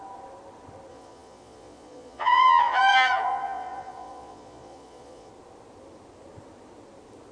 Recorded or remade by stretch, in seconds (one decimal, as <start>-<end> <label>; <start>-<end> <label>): 0.0-0.9 recorded; 0.9-5.3 remade; 5.3-7.3 recorded